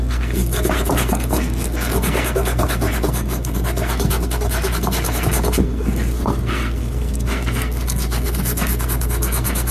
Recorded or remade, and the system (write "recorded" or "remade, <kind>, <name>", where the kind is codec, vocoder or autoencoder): remade, codec, SNAC